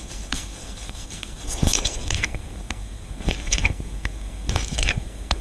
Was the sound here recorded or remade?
remade